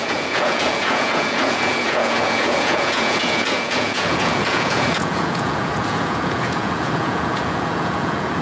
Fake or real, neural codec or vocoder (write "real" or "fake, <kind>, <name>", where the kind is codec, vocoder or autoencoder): fake, vocoder, Vocos